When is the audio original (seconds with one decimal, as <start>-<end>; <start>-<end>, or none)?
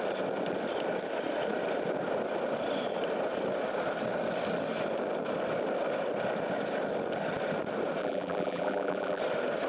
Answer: 0.0-8.0; 9.2-9.7